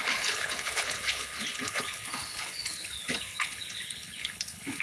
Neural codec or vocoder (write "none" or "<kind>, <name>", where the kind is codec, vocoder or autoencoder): codec, HILCodec